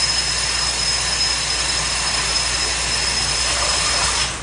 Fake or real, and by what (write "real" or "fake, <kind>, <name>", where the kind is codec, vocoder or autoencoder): real